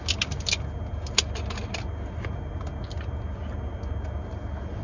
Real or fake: real